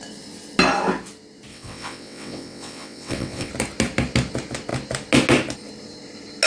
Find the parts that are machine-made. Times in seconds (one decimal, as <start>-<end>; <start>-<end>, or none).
1.5-3.5